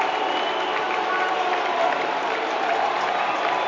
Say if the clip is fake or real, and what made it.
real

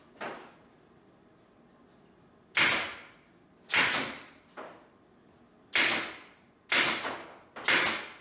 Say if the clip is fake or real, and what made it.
real